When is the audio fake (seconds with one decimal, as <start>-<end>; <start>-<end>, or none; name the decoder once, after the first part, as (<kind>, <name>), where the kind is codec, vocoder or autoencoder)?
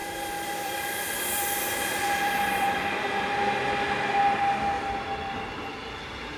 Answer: 0.0-2.8 (vocoder, BigVGAN v2)